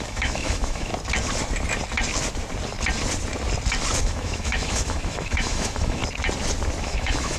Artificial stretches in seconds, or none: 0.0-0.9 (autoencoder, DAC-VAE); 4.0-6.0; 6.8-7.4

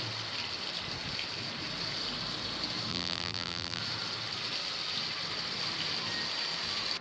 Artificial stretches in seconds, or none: 2.9-3.8 (vocoder, BigVGAN v2)

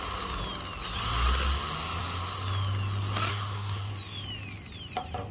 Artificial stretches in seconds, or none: 3.3-3.9 (codec, SNAC)

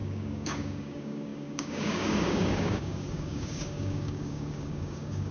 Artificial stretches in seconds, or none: 0.0-5.3 (codec, DAC)

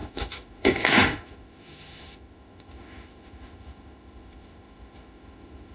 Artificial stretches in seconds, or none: 0.0-5.7 (autoencoder, DAC-VAE)

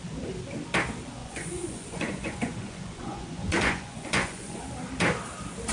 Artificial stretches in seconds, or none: 1.2-4.6 (vocoder, Vocos)

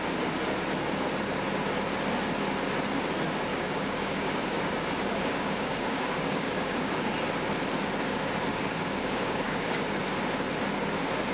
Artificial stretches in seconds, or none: 3.5-7.1 (codec, DAC); 8.5-9.7